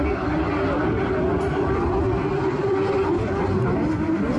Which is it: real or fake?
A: real